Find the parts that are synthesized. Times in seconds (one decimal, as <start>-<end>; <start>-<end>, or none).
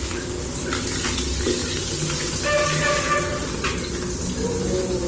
none